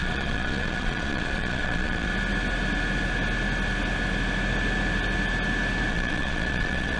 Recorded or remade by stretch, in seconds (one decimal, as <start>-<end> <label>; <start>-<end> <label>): 0.0-2.1 remade; 2.1-5.9 recorded; 5.9-7.0 remade